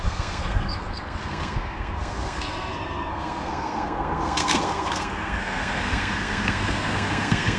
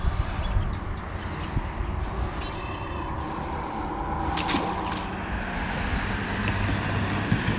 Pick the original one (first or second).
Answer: second